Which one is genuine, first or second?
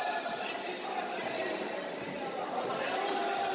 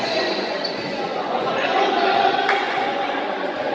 first